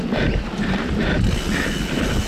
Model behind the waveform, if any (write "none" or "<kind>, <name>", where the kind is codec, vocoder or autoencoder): none